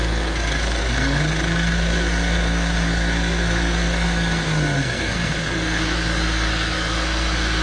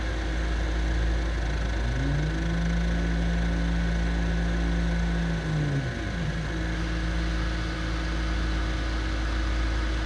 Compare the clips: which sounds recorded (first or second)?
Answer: second